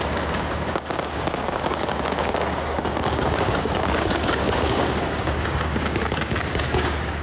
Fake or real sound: fake